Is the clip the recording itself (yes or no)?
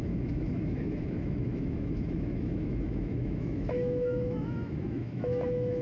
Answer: no